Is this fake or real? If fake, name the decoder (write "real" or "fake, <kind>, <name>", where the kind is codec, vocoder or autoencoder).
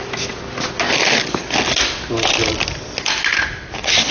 real